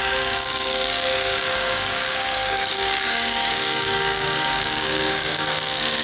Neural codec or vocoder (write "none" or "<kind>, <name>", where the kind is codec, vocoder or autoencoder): codec, DAC